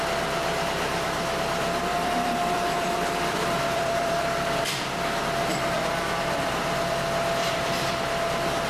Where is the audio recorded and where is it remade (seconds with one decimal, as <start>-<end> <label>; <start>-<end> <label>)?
0.0-1.9 recorded; 1.9-6.5 remade; 6.5-7.4 recorded; 7.4-8.0 remade; 8.0-8.7 recorded